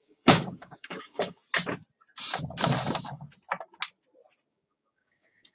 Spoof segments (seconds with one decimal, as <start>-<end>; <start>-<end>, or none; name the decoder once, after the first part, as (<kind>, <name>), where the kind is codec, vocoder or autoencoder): 0.0-1.4 (codec, DAC); 4.5-5.5